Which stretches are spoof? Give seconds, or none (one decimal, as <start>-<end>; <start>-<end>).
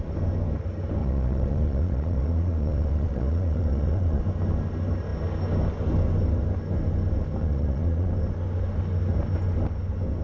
1.0-4.2; 7.4-8.1